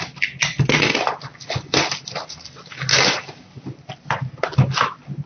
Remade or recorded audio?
recorded